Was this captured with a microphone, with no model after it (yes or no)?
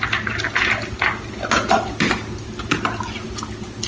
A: yes